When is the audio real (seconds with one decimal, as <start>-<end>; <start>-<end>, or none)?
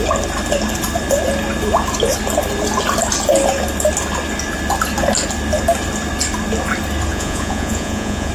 0.0-7.1